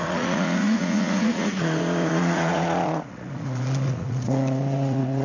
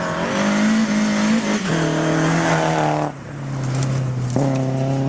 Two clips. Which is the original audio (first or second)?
second